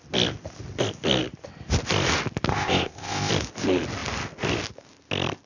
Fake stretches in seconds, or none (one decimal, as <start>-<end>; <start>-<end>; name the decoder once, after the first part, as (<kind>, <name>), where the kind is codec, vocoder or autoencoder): 2.5-3.3 (codec, ZipCodec)